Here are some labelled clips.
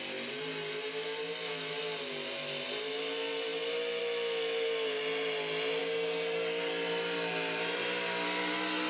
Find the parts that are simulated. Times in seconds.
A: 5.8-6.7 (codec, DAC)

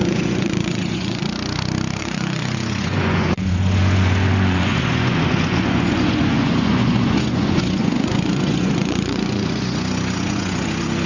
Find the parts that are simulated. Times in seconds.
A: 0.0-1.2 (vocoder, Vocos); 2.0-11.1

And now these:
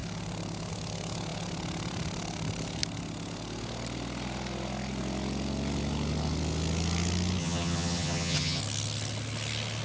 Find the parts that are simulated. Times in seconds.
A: 7.4-8.6 (vocoder, HiFi-GAN)

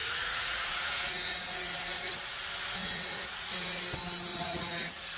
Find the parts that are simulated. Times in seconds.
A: 0.0-2.4 (vocoder, Vocos); 2.8-3.8; 4.3-5.2